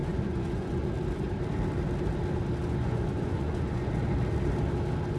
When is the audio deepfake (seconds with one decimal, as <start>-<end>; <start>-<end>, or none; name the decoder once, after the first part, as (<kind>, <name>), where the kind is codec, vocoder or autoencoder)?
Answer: 0.0-0.9 (vocoder, Vocos); 2.6-3.9